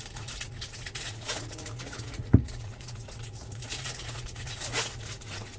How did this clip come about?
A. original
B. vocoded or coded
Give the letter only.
B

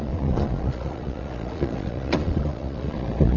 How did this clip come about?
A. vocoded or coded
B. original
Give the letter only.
A